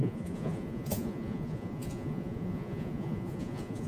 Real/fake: fake